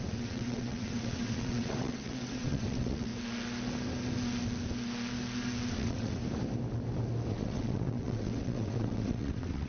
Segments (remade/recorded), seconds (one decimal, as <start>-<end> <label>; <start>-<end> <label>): 0.0-3.1 remade; 3.1-5.7 recorded; 5.7-6.2 remade; 6.2-7.3 recorded; 7.3-9.7 remade